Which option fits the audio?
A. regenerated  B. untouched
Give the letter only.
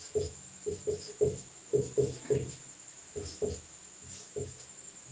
A